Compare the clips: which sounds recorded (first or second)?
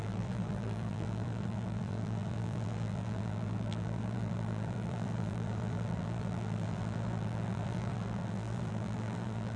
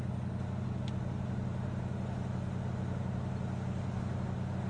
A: second